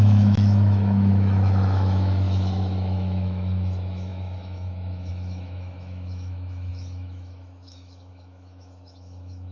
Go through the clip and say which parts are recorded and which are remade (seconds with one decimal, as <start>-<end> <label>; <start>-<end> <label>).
0.0-9.5 remade